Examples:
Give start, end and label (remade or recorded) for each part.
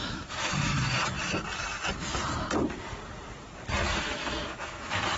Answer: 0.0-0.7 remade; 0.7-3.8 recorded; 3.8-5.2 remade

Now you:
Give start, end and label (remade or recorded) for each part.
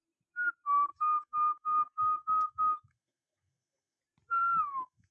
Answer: 0.0-0.9 recorded; 0.9-4.0 remade; 4.0-4.4 recorded; 4.4-5.1 remade